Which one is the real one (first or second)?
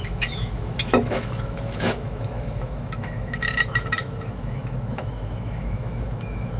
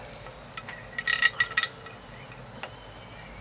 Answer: second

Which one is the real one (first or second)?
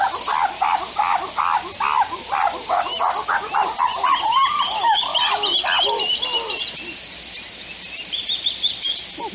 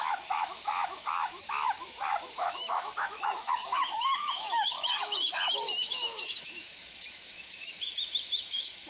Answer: first